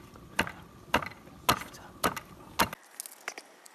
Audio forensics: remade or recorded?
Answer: recorded